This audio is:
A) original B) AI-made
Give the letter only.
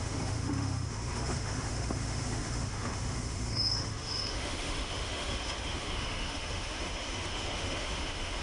B